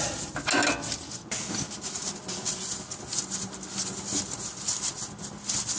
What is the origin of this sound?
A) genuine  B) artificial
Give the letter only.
A